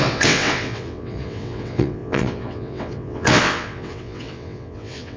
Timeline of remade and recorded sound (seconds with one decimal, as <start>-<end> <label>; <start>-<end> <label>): 0.0-5.2 remade